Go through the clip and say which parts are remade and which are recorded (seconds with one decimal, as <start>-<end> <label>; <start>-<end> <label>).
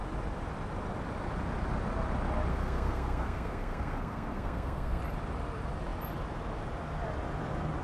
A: 0.0-2.5 recorded; 2.5-5.0 remade; 5.0-7.8 recorded